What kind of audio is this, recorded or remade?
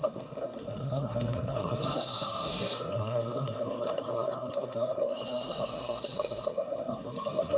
remade